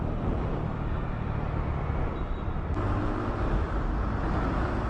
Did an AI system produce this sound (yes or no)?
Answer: no